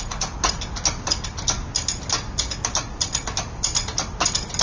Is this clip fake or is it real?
real